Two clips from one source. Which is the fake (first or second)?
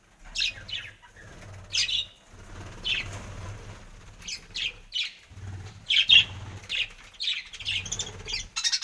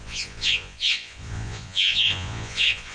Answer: second